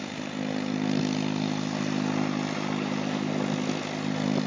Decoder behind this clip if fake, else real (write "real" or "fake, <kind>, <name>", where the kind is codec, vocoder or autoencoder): real